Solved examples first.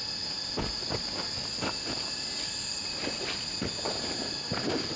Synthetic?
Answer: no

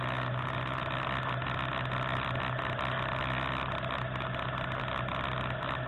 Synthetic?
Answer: no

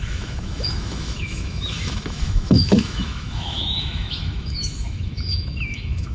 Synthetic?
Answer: yes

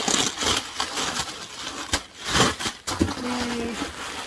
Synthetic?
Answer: no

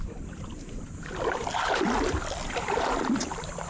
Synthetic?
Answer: yes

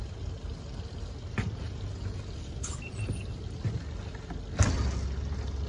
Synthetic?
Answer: no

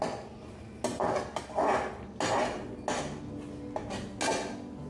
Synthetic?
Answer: no